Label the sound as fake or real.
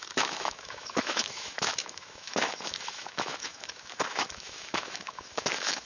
fake